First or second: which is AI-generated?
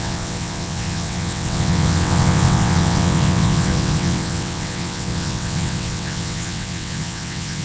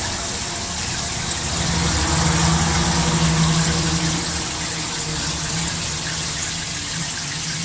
first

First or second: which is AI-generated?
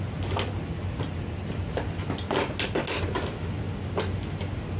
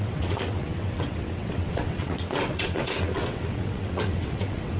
second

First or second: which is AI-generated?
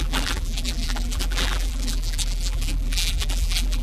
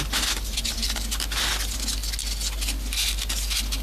first